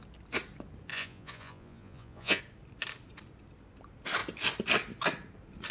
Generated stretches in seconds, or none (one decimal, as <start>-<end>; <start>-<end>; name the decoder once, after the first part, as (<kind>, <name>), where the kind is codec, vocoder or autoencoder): 0.9-2.4 (vocoder, Vocos)

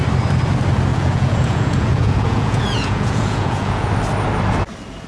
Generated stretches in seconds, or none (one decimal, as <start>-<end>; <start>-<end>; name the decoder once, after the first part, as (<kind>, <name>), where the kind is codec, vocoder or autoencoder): 0.9-3.9 (vocoder, Vocos)

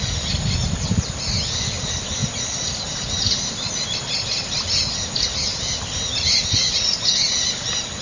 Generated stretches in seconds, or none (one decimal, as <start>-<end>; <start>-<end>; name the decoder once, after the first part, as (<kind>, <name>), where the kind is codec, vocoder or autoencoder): none

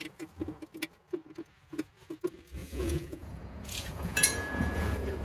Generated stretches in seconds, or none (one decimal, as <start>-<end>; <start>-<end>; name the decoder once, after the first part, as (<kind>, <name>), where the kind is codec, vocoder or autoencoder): 2.6-5.2 (vocoder, Vocos)

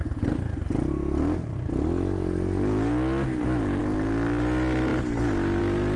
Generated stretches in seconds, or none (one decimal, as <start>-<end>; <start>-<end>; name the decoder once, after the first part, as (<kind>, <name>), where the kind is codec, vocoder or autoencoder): none

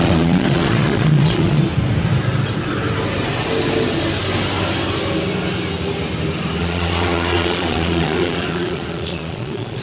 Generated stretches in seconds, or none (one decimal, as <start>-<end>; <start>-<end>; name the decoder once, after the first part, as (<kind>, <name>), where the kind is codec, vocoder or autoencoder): 0.0-1.6 (vocoder, Vocos); 6.6-9.8

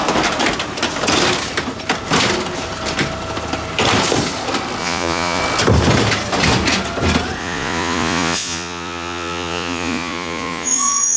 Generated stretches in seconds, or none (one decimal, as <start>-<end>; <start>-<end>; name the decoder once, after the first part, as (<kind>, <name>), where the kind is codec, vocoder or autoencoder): 4.8-5.4 (vocoder, Vocos); 7.4-11.2